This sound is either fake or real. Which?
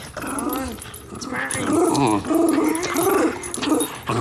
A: real